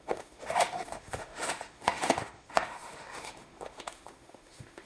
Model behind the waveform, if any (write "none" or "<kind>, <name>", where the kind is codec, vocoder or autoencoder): autoencoder, DAC-VAE